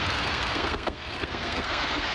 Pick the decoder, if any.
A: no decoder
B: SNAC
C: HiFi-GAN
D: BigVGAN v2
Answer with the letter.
B